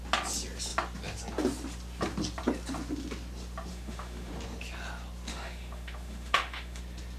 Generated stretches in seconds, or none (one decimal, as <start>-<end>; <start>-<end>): 3.7-4.3; 5.3-6.8